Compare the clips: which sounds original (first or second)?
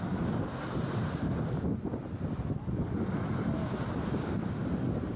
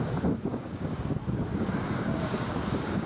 first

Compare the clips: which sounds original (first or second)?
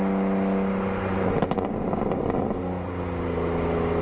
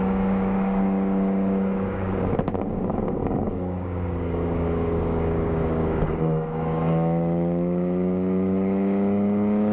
first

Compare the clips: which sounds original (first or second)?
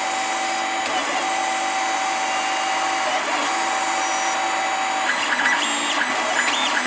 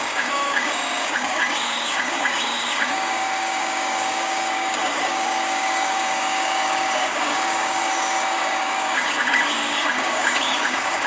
first